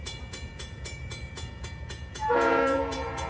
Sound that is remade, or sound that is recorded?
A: remade